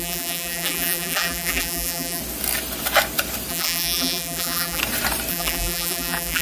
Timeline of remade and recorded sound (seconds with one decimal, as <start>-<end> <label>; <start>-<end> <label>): 0.0-2.2 remade; 2.2-3.5 recorded; 3.5-4.8 remade; 4.8-5.3 recorded; 5.3-6.4 remade